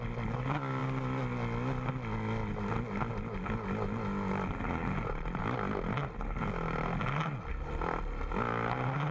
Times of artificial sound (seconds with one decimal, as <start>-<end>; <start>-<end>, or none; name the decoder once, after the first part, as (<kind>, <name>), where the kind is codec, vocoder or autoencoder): none